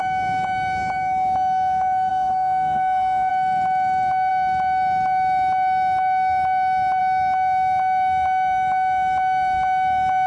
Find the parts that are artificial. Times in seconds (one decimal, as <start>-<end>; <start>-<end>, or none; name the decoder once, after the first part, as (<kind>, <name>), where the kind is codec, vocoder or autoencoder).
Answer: 2.1-3.3 (autoencoder, DAC-VAE)